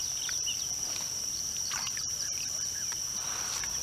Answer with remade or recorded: remade